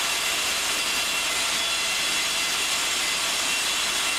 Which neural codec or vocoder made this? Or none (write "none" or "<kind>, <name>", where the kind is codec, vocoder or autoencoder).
none